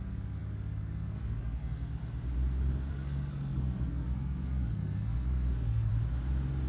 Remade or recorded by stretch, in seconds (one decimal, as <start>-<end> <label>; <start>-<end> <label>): 0.0-2.0 remade; 2.0-2.9 recorded; 2.9-5.9 remade; 5.9-6.7 recorded